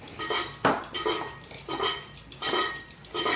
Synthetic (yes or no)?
no